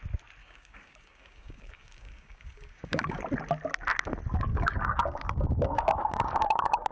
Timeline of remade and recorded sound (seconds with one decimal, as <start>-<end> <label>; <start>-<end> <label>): 0.0-0.4 recorded; 0.4-3.2 remade; 3.2-4.5 recorded; 4.5-6.9 remade